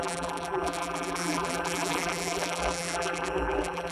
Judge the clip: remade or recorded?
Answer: remade